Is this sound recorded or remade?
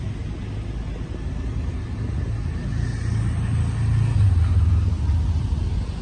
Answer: recorded